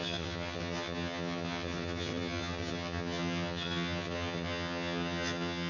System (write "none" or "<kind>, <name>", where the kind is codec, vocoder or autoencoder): vocoder, HiFi-GAN